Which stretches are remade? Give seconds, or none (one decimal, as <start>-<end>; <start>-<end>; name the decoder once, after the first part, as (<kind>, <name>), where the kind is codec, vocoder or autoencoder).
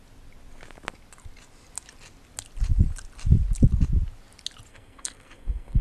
4.7-5.8 (codec, SNAC)